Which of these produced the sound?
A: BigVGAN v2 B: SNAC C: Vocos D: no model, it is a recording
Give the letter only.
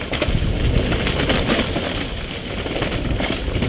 D